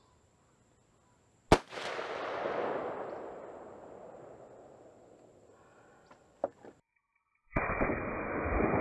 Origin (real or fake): real